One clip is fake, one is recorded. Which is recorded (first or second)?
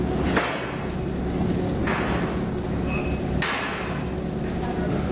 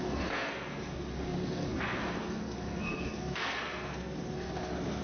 first